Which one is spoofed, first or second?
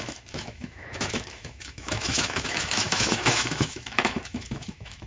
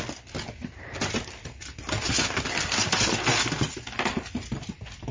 first